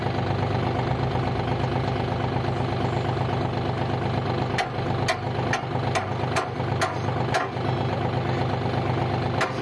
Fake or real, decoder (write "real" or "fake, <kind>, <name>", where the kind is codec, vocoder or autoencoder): real